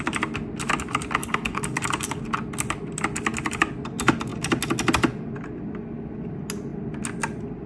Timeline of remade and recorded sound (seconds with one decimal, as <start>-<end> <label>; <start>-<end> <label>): 0.0-1.2 recorded; 1.2-2.2 remade; 2.2-7.7 recorded